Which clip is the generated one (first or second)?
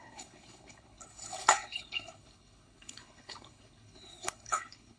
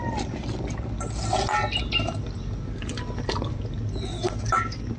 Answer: first